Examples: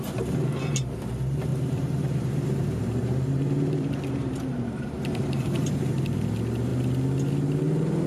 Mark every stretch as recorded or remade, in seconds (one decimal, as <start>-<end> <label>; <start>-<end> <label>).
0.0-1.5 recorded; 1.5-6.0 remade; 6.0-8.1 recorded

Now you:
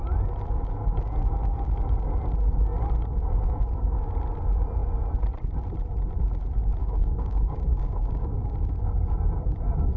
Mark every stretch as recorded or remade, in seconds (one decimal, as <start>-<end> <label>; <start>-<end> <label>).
0.0-6.8 recorded; 6.8-8.5 remade; 8.5-10.0 recorded

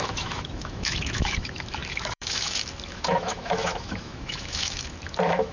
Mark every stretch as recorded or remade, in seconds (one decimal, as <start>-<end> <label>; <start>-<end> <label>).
0.0-5.5 remade

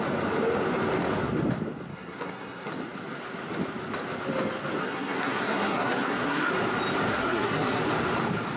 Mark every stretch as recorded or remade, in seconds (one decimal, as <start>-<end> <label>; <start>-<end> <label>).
0.0-1.9 recorded; 1.9-2.7 remade; 2.7-4.8 recorded; 4.8-6.5 remade; 6.5-7.1 recorded; 7.1-7.8 remade; 7.8-8.6 recorded